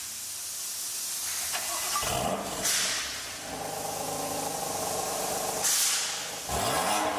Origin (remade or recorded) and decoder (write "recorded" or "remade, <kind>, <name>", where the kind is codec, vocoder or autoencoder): recorded